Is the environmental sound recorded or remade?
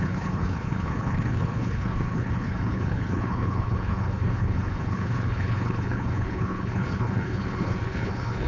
remade